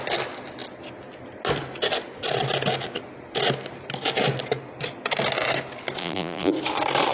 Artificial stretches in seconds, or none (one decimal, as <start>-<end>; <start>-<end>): 6.0-6.5